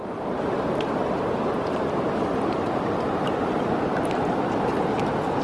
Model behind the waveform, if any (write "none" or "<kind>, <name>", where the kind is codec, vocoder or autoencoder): vocoder, BigVGAN v2